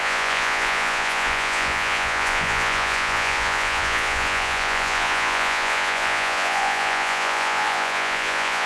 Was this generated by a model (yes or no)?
yes